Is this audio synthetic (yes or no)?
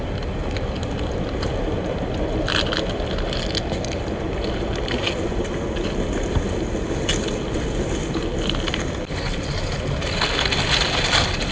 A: no